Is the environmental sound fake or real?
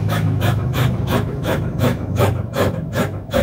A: fake